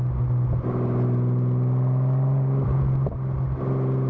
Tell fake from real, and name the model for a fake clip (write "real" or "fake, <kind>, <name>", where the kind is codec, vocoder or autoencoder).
real